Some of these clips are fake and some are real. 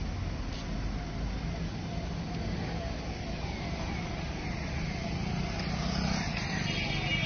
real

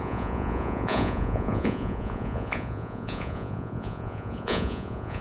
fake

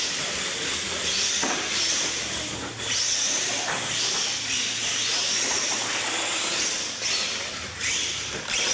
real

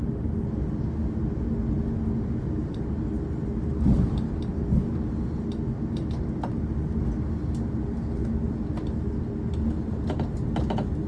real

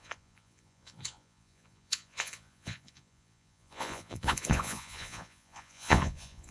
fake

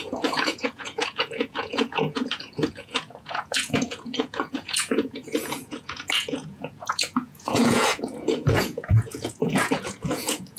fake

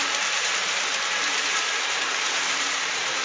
fake